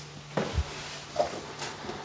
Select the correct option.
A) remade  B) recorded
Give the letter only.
B